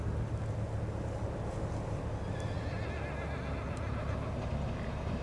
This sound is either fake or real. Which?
real